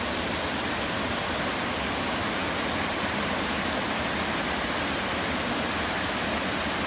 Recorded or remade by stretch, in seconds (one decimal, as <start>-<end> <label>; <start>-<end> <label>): 0.0-6.9 recorded